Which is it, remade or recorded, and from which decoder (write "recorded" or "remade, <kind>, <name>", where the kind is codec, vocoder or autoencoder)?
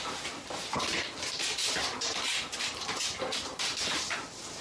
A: recorded